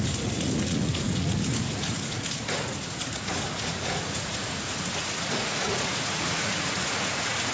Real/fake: fake